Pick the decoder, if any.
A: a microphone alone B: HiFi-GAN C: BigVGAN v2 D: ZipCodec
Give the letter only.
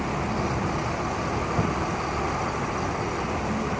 A